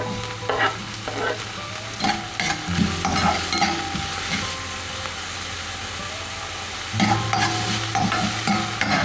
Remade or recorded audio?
recorded